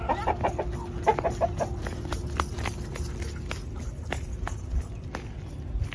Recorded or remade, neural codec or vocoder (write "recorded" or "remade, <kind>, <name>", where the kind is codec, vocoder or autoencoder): recorded